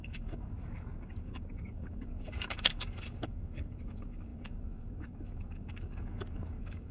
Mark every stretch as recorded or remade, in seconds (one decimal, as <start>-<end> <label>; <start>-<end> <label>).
0.0-6.9 remade